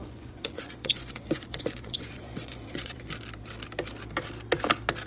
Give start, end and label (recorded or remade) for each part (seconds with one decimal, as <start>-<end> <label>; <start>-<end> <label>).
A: 0.0-3.1 remade; 3.1-5.1 recorded

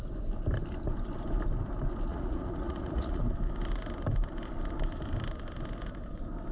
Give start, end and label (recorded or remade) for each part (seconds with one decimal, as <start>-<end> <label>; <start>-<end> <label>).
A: 0.0-2.1 recorded; 2.1-3.2 remade; 3.2-6.5 recorded

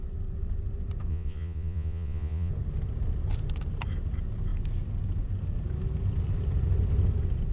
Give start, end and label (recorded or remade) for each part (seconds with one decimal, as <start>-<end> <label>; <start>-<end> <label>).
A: 0.0-1.1 recorded; 1.1-2.5 remade; 2.5-7.5 recorded